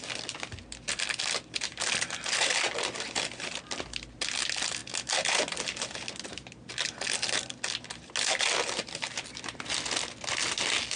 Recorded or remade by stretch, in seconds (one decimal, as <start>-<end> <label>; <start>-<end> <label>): 0.0-11.0 recorded